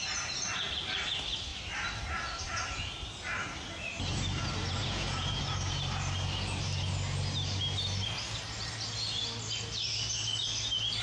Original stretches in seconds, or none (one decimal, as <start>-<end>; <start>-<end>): 0.0-4.8; 5.4-11.0